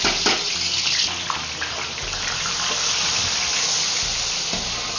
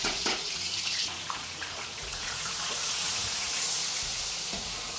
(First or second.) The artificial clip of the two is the second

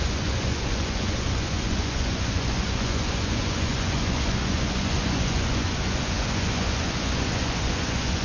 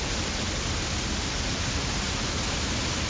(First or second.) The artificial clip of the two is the first